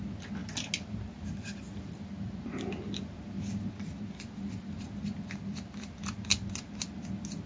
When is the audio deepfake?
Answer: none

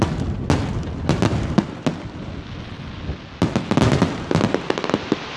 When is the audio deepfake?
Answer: none

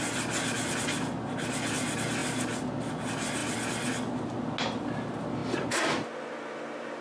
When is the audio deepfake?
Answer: none

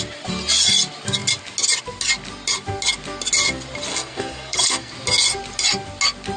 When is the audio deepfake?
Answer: 3.9-4.9